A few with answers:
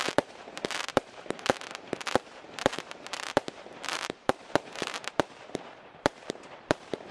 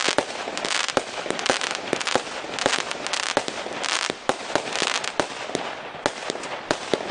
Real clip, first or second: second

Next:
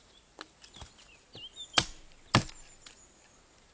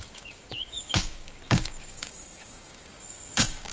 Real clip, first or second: first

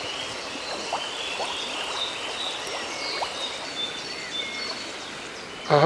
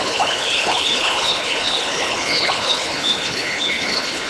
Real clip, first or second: first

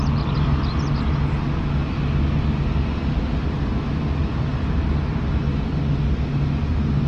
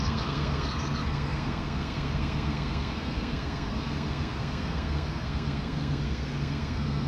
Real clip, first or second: first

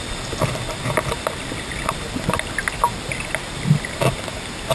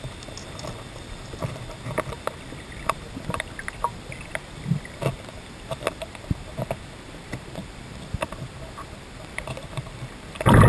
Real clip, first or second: first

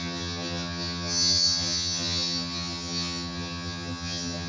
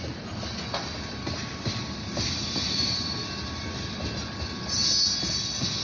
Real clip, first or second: second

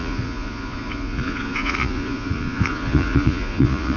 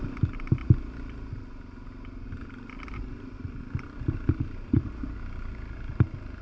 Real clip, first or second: second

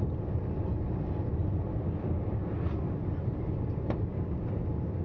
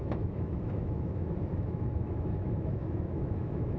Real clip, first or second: first